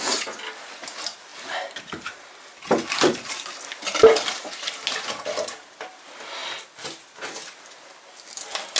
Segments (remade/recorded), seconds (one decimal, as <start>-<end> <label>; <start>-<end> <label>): 0.0-8.8 recorded